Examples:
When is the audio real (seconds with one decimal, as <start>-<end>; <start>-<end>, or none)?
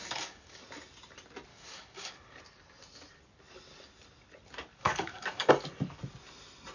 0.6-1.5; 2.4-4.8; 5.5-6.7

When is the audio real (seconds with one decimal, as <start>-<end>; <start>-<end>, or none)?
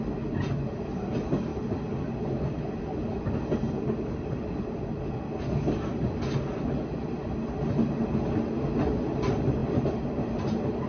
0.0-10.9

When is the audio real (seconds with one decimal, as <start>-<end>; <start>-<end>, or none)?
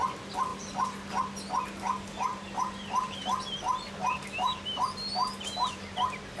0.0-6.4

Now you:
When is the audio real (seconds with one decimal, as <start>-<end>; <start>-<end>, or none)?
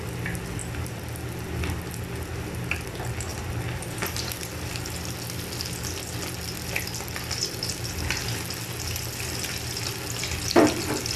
0.0-11.2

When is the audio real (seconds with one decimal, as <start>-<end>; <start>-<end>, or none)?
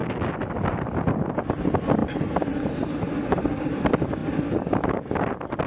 0.0-5.7